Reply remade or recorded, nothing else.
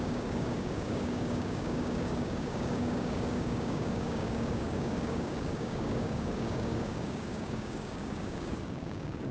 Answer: remade